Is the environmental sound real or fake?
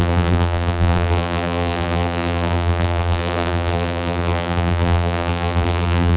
fake